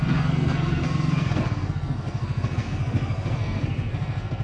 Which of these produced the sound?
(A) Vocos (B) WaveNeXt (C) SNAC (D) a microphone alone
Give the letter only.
C